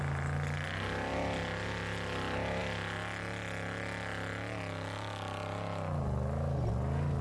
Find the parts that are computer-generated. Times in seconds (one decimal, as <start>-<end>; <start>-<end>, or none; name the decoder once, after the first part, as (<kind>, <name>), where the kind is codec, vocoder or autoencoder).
none

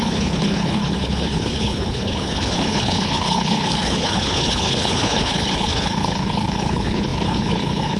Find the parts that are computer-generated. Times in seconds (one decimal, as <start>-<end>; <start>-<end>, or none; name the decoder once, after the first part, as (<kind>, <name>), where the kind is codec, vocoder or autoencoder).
0.0-8.0 (codec, HILCodec)